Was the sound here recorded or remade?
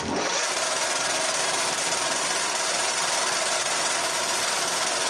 remade